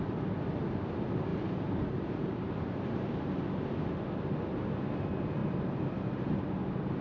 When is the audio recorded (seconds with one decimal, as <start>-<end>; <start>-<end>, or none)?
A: 0.0-1.3; 3.4-5.4; 6.5-7.0